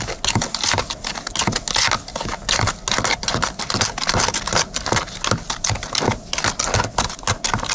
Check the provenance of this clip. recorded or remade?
recorded